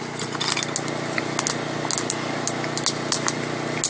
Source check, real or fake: real